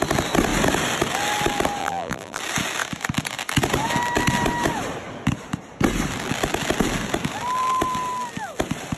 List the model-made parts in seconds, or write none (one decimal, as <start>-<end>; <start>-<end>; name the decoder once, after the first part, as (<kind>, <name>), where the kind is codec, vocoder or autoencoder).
1.8-2.4 (vocoder, BigVGAN v2)